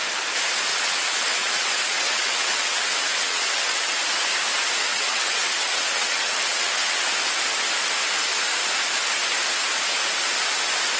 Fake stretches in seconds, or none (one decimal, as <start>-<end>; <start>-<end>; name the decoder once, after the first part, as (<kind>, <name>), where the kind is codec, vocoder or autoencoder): 0.7-3.9 (vocoder, WaveNeXt); 4.9-7.1